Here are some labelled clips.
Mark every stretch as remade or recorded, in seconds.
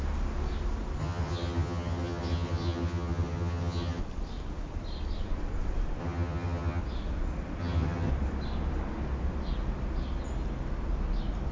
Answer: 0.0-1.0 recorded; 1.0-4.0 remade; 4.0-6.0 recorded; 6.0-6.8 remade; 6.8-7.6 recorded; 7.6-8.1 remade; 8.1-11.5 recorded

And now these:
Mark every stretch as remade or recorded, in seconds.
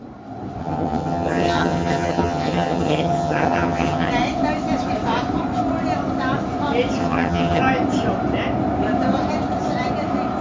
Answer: 0.0-0.6 recorded; 0.6-4.1 remade; 4.1-7.0 recorded; 7.0-7.6 remade; 7.6-10.4 recorded